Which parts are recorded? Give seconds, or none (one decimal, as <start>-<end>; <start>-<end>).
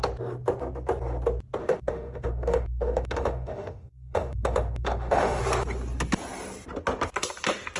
0.0-1.6; 5.4-7.8